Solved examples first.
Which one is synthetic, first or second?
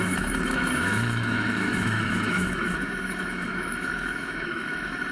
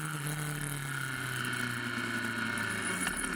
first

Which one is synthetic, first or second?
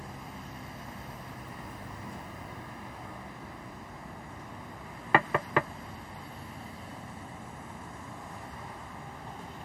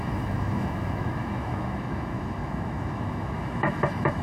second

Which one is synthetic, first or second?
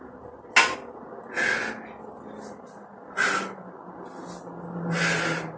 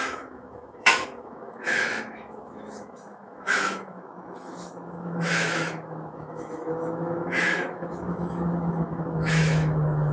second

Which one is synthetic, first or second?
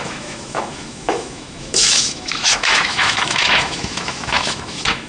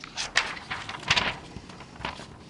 first